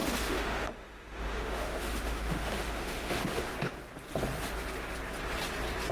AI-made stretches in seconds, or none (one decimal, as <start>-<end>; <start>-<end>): 0.0-3.5